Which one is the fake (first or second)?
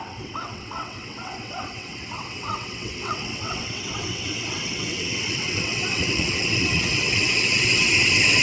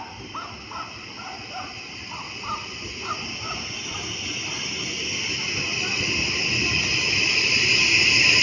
first